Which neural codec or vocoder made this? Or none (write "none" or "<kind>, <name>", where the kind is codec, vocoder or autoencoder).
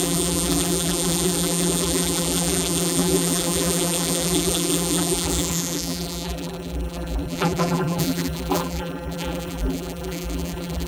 vocoder, BigVGAN v2